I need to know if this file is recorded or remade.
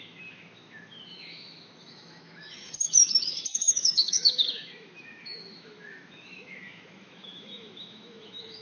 remade